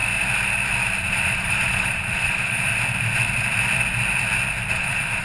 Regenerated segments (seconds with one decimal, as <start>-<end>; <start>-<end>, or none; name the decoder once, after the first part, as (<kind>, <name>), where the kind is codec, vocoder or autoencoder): 1.0-2.7 (vocoder, Vocos); 4.7-5.2